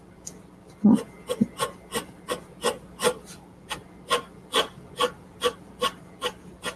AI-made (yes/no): no